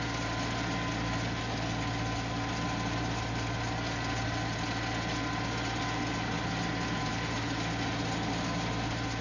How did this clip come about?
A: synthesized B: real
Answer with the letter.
B